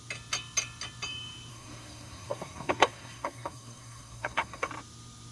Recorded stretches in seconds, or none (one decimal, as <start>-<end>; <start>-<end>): 0.0-1.5; 4.7-5.3